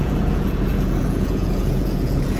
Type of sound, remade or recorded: remade